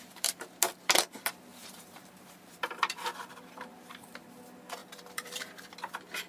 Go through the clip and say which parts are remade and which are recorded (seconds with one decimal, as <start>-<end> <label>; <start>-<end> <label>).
0.0-1.6 recorded; 1.6-4.2 remade; 4.2-4.8 recorded; 4.8-5.7 remade; 5.7-6.3 recorded